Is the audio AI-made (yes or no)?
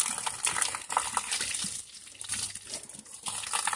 no